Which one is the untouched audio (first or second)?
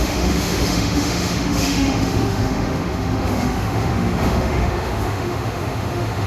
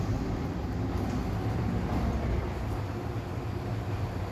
second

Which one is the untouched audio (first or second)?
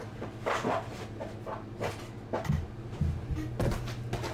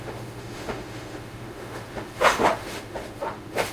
first